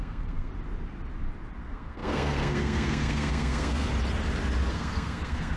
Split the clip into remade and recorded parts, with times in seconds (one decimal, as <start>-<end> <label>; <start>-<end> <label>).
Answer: 0.0-0.5 remade; 0.5-1.6 recorded; 1.6-3.9 remade; 3.9-4.7 recorded; 4.7-5.6 remade